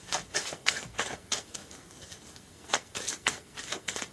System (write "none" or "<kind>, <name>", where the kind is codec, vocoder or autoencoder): codec, SNAC